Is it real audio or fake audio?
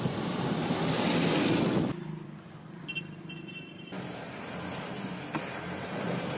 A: real